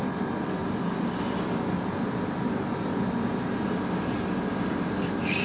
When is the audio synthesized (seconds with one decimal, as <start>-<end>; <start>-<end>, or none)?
none